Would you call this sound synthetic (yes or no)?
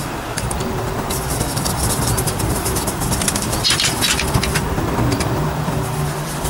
yes